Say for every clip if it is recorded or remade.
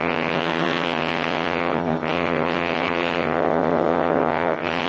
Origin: remade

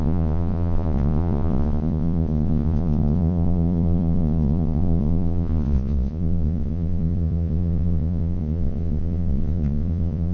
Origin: remade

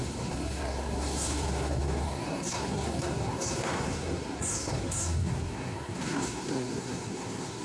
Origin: remade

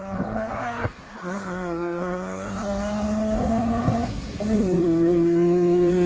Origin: remade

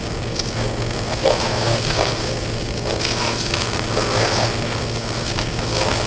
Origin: remade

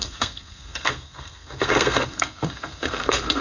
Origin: remade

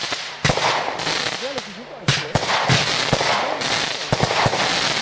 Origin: recorded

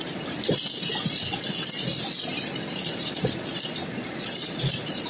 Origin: recorded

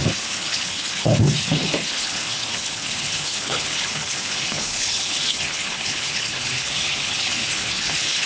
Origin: remade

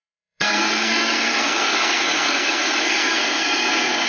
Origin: remade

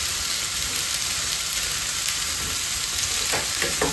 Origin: recorded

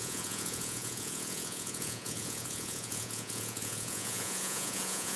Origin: remade